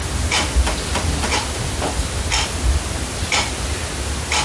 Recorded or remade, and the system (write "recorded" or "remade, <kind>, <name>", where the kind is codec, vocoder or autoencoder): recorded